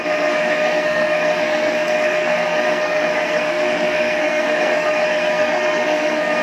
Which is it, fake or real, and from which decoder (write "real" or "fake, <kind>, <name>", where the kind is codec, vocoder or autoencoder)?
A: fake, codec, SNAC